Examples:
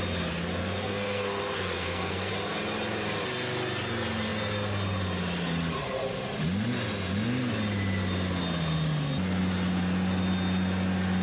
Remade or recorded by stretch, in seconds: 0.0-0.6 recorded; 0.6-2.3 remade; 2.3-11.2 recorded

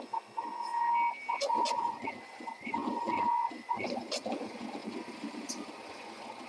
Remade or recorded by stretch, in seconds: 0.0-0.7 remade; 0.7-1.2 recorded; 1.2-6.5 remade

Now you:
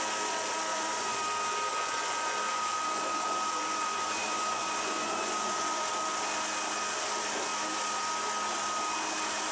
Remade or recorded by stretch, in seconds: 0.0-0.7 recorded; 0.7-1.2 remade; 1.2-1.7 recorded; 1.7-5.9 remade; 5.9-9.5 recorded

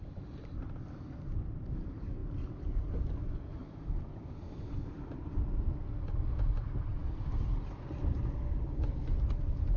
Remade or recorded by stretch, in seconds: 0.0-3.6 recorded; 3.6-5.8 remade; 5.8-9.8 recorded